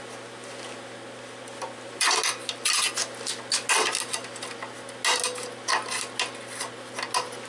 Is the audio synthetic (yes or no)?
no